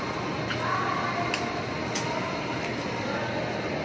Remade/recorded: recorded